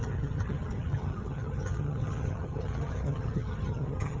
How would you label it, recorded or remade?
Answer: remade